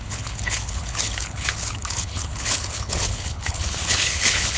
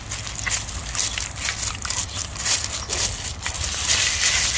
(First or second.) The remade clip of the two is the first